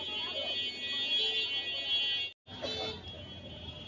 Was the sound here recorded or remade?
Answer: recorded